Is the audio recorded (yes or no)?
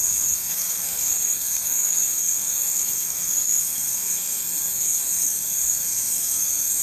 no